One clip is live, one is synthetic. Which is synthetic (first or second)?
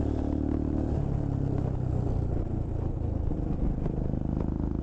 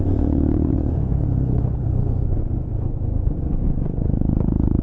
second